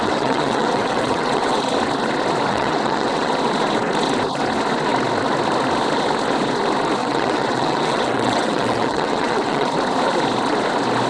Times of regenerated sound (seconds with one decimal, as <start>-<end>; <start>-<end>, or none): 0.0-1.6; 2.5-3.3; 7.0-9.7